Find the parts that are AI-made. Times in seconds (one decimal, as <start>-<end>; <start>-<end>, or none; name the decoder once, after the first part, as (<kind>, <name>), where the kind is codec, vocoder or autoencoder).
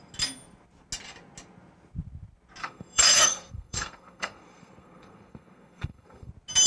2.6-6.3 (codec, SNAC)